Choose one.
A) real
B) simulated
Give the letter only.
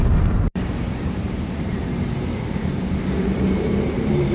B